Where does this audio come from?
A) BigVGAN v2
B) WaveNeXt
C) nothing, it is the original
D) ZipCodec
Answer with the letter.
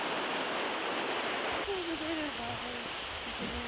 C